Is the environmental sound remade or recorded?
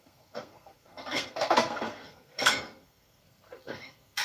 remade